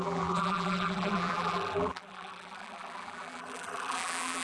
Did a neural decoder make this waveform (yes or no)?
yes